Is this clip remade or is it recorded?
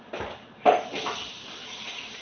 recorded